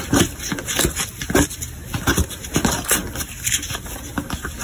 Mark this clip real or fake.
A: real